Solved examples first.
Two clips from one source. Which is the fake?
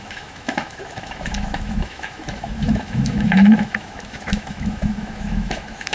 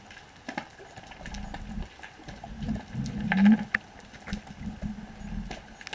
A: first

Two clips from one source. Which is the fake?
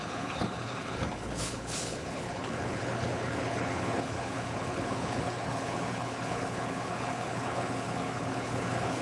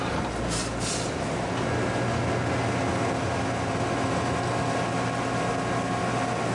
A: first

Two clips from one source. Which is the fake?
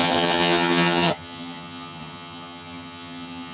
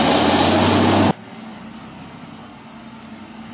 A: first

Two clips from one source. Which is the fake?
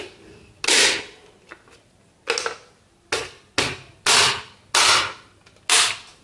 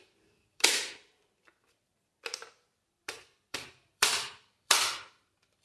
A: second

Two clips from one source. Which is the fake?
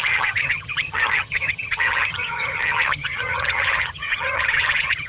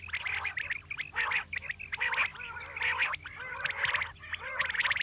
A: first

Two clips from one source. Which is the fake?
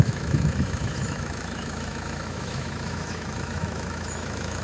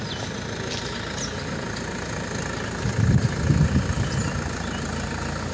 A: first